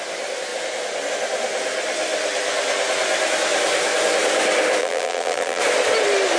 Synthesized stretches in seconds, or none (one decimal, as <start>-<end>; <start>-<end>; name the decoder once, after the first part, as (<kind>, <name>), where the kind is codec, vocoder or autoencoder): 4.8-5.6 (vocoder, BigVGAN v2)